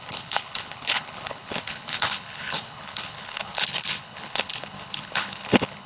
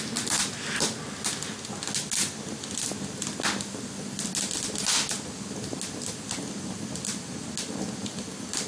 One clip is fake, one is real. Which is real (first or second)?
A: second